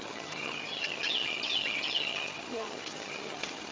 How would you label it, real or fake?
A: fake